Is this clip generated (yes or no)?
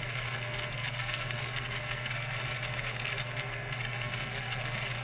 yes